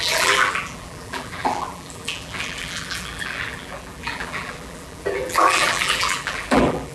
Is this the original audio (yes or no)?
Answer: no